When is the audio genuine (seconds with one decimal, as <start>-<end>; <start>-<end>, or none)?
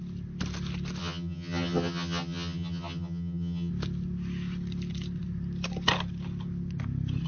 0.0-1.0; 3.7-7.3